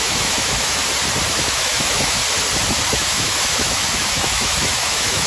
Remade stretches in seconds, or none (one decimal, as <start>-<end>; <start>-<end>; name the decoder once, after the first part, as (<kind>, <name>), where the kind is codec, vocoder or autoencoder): 0.0-0.8 (autoencoder, DAC-VAE); 1.3-2.2; 2.8-5.3